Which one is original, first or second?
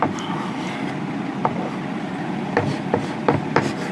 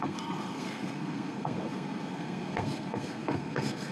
first